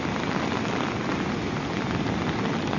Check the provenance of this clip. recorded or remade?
recorded